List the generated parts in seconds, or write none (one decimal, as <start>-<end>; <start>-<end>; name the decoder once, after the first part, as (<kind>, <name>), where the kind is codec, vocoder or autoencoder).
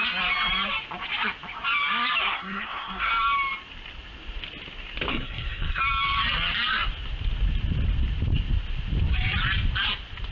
2.2-3.1 (codec, SNAC); 5.1-5.8